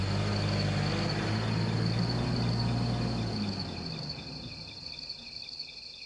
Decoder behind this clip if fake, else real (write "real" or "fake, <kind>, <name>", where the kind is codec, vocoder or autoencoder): real